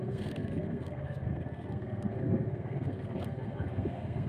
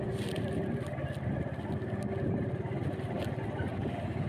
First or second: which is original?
second